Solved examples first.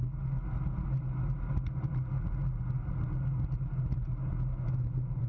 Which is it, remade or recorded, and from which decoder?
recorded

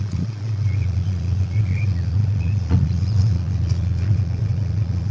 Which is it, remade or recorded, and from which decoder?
remade, vocoder, Vocos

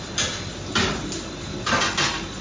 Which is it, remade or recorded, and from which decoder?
recorded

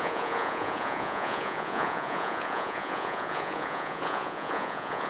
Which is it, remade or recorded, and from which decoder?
remade, vocoder, Vocos